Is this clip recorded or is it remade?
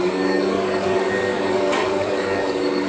remade